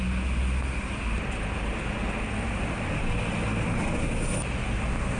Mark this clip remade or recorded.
recorded